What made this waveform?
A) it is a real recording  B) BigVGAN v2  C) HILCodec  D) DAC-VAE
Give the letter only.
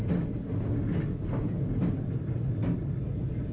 A